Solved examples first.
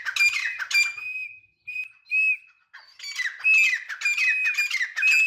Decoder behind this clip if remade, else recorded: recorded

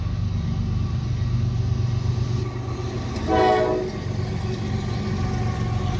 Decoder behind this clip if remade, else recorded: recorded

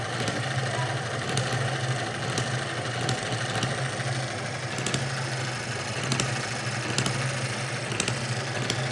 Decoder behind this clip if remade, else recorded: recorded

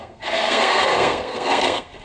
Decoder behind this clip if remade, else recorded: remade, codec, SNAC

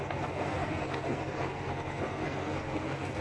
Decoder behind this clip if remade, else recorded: remade, codec, SNAC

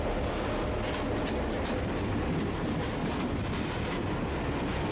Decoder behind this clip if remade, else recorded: recorded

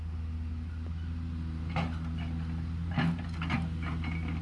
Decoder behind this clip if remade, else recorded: recorded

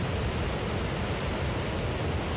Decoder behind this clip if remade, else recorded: recorded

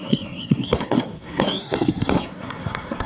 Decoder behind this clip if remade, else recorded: remade, codec, SNAC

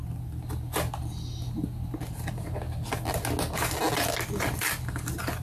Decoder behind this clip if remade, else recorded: recorded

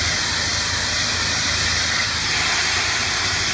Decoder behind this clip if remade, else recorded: recorded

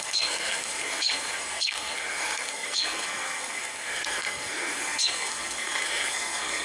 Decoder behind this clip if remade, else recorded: remade, codec, SNAC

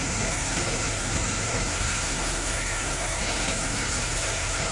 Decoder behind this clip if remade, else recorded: remade, codec, SNAC